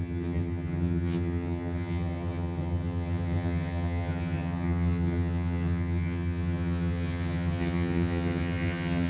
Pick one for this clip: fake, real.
fake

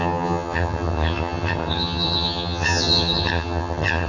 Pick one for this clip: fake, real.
fake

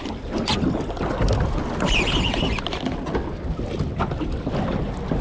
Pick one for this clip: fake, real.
real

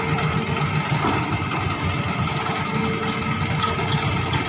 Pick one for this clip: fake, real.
real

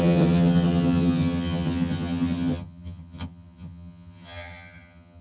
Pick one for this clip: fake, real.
fake